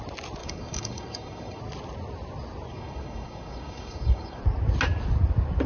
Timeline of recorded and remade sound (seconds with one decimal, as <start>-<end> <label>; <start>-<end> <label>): 0.0-0.4 recorded; 0.4-1.6 remade; 1.6-2.7 recorded; 2.7-4.4 remade; 4.4-5.7 recorded